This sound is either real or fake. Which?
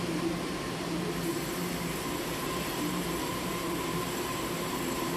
fake